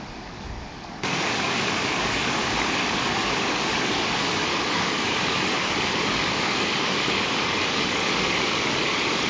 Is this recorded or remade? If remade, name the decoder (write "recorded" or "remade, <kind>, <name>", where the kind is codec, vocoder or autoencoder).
remade, codec, DAC